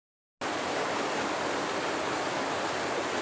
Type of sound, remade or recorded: recorded